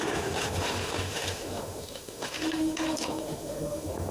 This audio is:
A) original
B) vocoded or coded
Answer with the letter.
B